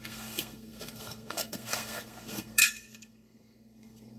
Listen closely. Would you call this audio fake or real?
fake